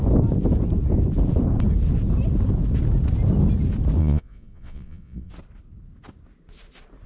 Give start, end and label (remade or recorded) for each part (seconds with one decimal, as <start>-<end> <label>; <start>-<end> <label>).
0.0-4.0 recorded; 4.0-5.3 remade; 5.3-7.1 recorded